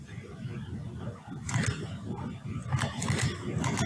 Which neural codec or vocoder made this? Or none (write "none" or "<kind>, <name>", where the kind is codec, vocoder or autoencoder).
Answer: none